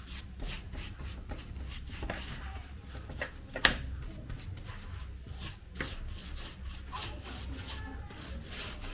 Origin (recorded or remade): recorded